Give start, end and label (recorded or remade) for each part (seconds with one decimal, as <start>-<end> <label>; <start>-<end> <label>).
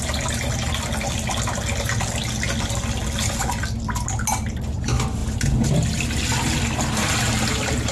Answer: 0.0-7.9 recorded